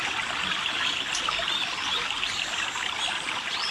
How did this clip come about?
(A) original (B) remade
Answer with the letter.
A